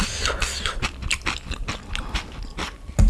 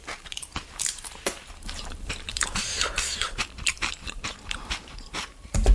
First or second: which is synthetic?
second